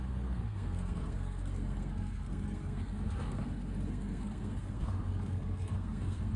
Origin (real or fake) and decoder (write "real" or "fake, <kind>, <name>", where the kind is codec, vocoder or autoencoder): fake, codec, SNAC